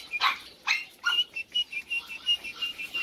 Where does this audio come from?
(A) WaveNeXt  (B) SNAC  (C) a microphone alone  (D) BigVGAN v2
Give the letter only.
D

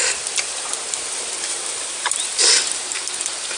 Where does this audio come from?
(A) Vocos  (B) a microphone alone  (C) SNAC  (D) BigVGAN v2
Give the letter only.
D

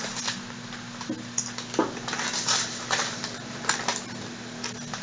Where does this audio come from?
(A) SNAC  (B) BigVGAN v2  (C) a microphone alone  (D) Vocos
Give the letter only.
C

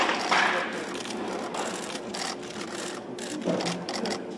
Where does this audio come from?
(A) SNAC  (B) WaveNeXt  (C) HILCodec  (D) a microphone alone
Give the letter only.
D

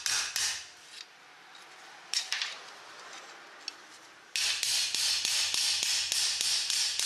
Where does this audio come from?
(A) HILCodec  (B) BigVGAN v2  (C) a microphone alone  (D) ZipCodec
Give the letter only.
C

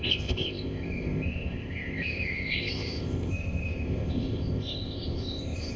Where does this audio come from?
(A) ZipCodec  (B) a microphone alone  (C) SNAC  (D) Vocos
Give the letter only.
A